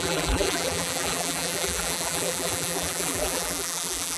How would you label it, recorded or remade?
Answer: remade